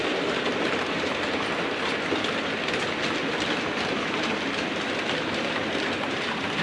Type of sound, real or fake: real